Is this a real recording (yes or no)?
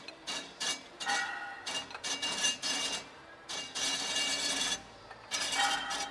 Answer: no